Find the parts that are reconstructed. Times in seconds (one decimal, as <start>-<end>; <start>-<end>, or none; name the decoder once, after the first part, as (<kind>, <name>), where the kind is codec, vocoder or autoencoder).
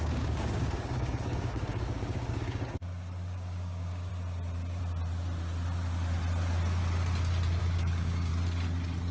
0.0-4.1 (codec, DAC); 7.6-8.3